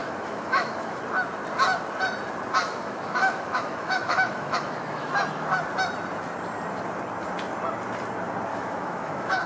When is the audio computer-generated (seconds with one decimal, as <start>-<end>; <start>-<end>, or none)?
0.0-1.0; 2.6-5.1; 8.5-9.5

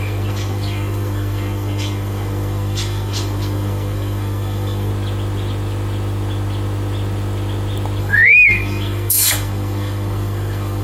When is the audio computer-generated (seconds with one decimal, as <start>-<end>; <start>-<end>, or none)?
0.0-4.9; 8.0-10.8